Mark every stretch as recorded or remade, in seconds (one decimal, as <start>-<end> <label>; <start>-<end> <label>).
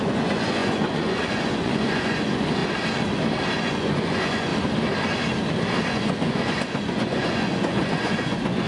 0.0-2.6 remade; 2.6-3.6 recorded; 3.6-4.5 remade; 4.5-5.9 recorded; 5.9-8.7 remade